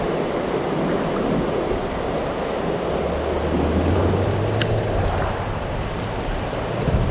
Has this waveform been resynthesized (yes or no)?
no